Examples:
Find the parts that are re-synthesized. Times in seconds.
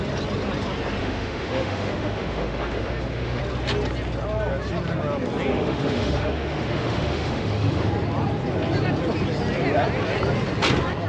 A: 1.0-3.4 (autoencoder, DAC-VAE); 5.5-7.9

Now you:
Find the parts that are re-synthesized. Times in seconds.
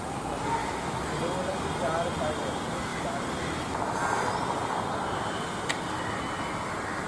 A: 0.6-1.2 (autoencoder, DAC-VAE)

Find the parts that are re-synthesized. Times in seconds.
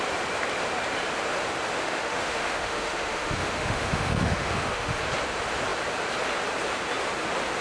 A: 1.7-5.0 (autoencoder, DAC-VAE)